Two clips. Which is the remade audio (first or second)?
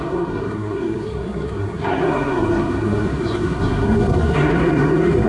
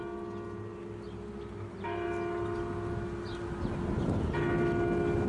first